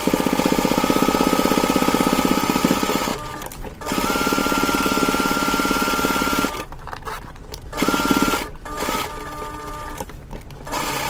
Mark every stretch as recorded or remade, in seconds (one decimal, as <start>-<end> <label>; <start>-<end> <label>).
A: 0.0-11.1 recorded